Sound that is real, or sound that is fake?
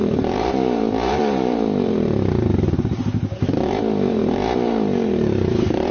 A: fake